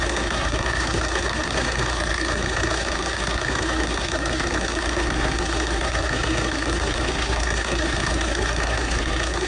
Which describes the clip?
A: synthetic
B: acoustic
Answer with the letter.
A